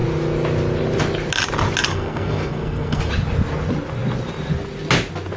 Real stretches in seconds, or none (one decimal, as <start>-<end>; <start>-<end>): 0.0-1.9; 3.1-5.4

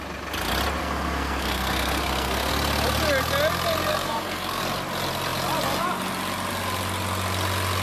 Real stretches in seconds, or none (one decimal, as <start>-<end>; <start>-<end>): 0.0-0.8; 2.5-3.9; 4.6-7.8

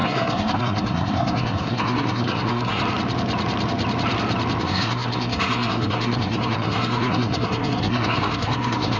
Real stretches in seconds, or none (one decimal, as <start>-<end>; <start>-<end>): 2.8-4.6